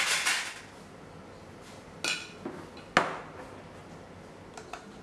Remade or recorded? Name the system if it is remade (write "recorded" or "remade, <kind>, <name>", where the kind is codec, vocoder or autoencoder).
recorded